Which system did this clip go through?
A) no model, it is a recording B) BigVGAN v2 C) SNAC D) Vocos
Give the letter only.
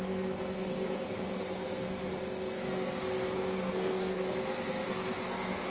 C